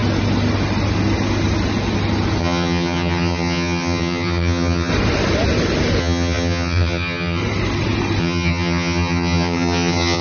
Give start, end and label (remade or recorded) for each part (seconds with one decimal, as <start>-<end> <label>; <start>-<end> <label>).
0.0-2.4 recorded; 2.4-4.9 remade; 4.9-6.0 recorded; 6.0-7.4 remade; 7.4-8.2 recorded; 8.2-10.2 remade